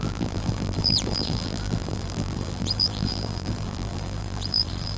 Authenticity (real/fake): fake